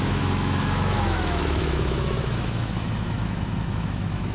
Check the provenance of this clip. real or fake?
fake